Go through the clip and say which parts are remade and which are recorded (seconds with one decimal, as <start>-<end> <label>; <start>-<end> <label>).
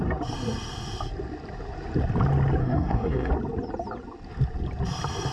0.0-2.6 recorded; 2.6-3.3 remade; 3.3-5.3 recorded